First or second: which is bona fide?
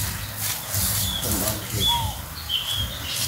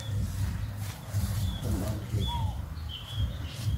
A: first